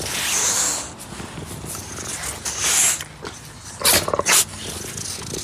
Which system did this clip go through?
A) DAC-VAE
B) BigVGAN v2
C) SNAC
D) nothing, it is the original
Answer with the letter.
D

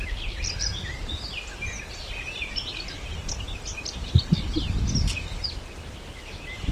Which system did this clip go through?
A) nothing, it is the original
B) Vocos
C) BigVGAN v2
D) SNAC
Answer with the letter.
A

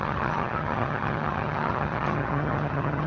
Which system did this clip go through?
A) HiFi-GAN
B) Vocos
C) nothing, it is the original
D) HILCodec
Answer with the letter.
A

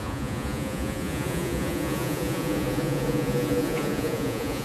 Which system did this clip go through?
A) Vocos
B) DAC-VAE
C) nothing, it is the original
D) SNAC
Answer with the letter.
A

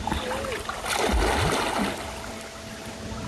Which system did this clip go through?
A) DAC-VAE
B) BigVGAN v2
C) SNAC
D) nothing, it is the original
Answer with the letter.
D